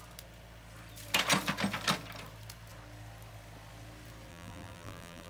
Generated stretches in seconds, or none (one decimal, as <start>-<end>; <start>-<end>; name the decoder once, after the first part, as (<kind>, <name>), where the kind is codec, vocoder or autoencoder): 4.3-5.3 (vocoder, BigVGAN v2)

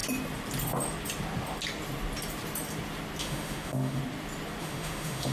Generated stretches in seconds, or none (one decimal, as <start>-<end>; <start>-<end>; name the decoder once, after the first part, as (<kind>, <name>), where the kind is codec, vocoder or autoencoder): 3.2-4.0 (autoencoder, DAC-VAE); 4.6-5.3

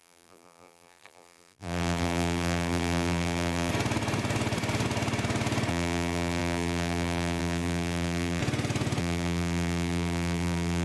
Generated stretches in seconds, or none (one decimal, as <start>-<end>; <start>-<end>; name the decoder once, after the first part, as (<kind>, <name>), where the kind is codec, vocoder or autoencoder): 0.0-3.7 (vocoder, BigVGAN v2); 5.7-8.4; 9.0-10.8

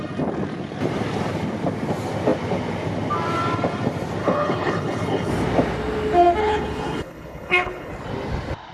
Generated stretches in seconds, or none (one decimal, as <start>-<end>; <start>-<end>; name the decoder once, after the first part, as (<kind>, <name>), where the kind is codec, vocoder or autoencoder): 4.2-5.3 (codec, HILCodec); 6.4-7.9

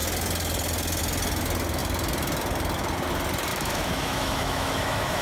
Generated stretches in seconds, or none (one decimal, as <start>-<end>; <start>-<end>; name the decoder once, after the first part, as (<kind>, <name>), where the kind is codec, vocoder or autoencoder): 3.5-5.2 (autoencoder, DAC-VAE)

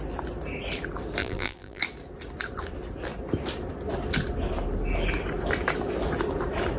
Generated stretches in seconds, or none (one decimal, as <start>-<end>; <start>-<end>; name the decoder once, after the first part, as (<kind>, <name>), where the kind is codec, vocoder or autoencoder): 1.2-1.8 (vocoder, BigVGAN v2)

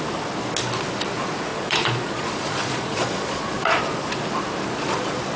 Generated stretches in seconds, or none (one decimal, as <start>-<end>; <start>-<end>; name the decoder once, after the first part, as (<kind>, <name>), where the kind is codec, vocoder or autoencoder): 1.5-3.8 (vocoder, Vocos)

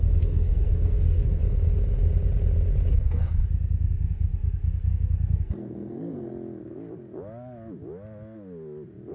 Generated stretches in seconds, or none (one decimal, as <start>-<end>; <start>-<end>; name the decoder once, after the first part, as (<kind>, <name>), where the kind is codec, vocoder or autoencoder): 0.0-1.4 (codec, SNAC); 2.9-6.3